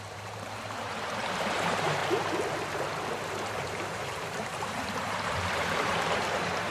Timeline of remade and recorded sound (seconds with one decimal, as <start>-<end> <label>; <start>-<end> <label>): 0.0-2.0 remade; 2.0-3.1 recorded; 3.1-6.7 remade